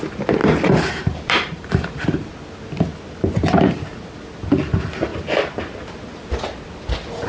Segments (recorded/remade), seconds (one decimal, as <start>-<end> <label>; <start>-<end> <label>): 0.0-0.4 recorded; 0.4-2.3 remade; 2.3-7.3 recorded